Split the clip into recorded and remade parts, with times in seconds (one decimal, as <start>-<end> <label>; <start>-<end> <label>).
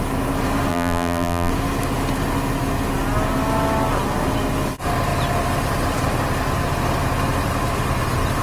0.0-0.7 recorded; 0.7-1.5 remade; 1.5-8.4 recorded